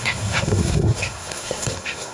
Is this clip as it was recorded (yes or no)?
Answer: no